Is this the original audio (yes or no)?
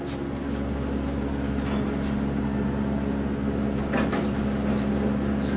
yes